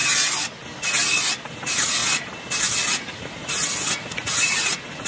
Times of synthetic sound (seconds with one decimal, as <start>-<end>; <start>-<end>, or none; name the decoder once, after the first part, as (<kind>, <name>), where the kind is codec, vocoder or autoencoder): 1.5-2.0 (vocoder, Vocos); 2.6-5.1